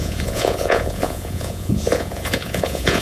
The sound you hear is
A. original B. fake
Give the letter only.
B